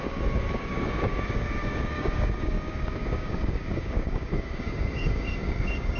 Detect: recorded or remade remade